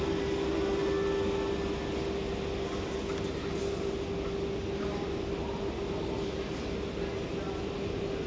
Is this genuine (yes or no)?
yes